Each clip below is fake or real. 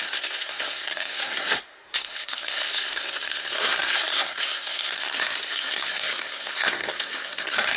fake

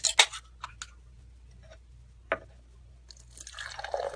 real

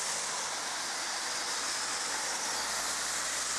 real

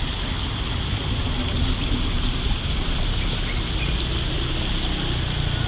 real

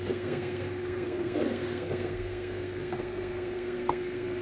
fake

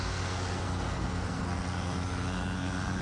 fake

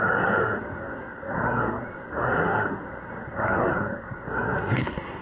fake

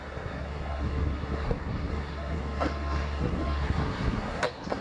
fake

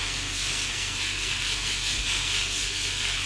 fake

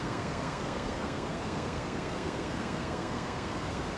fake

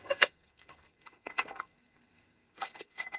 fake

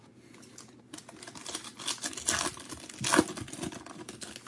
real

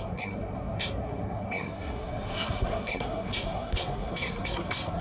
fake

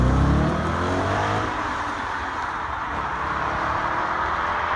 real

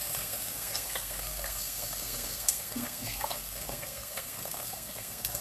fake